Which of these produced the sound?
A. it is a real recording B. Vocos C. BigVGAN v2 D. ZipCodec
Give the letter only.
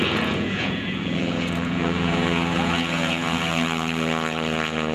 B